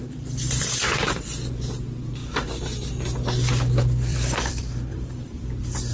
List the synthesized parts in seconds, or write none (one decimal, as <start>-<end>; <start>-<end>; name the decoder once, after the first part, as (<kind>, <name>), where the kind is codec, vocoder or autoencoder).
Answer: 0.0-0.8 (vocoder, BigVGAN v2); 4.1-5.5